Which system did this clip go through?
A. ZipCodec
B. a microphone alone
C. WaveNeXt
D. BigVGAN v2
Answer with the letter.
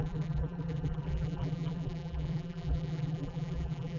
D